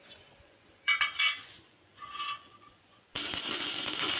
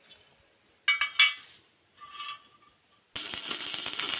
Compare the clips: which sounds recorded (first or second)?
second